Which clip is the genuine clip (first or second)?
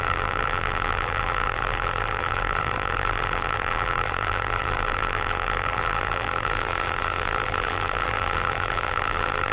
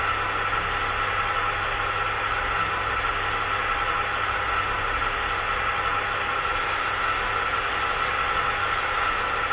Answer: second